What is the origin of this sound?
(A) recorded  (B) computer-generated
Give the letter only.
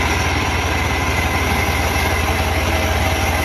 A